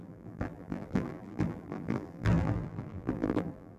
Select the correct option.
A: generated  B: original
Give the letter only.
A